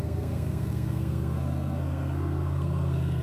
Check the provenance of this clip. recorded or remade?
remade